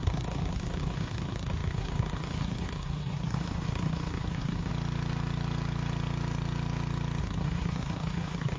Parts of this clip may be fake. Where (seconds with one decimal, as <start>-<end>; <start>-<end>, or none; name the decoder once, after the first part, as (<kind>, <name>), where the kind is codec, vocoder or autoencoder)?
0.0-4.7 (codec, SNAC); 7.2-8.6